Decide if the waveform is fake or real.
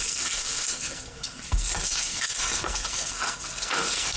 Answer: fake